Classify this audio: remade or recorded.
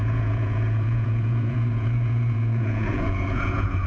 remade